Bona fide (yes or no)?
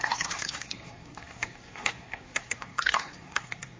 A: no